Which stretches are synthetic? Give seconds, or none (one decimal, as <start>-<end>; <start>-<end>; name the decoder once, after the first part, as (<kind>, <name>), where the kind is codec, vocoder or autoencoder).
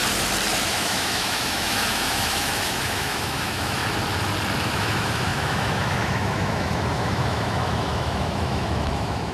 0.7-3.8 (autoencoder, DAC-VAE); 4.6-9.3